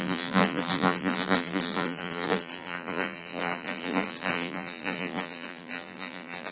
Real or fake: fake